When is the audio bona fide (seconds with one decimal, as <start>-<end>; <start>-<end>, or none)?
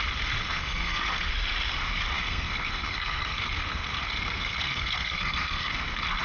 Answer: 0.0-0.4; 1.3-2.2; 5.7-6.2